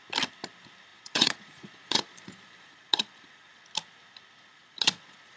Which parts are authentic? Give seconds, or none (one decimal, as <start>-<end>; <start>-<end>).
0.0-0.9; 3.6-4.5